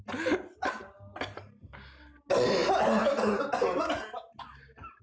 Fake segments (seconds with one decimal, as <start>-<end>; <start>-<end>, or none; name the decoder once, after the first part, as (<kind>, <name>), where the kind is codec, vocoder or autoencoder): none